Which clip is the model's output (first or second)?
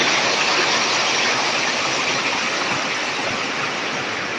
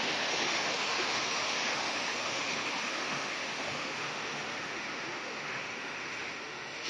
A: second